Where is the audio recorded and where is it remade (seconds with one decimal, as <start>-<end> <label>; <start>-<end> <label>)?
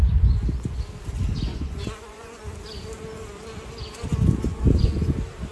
0.0-1.5 recorded; 1.5-2.4 remade; 2.4-4.5 recorded; 4.5-5.1 remade; 5.1-5.5 recorded